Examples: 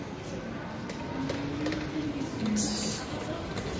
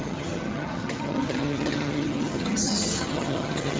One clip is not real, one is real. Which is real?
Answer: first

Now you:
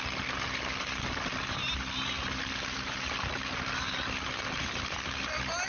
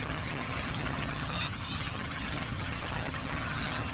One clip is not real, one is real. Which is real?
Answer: first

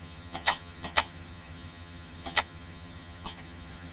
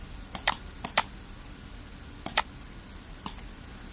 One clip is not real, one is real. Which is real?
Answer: second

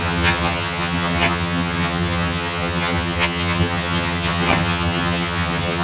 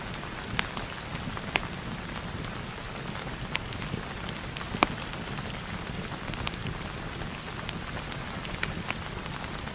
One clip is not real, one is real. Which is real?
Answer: second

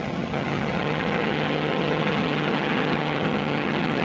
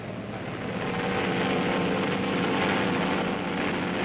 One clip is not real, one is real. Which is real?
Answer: second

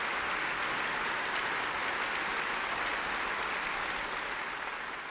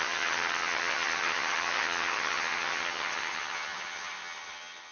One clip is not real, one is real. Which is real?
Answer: first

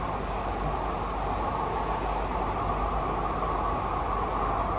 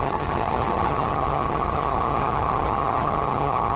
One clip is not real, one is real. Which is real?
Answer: first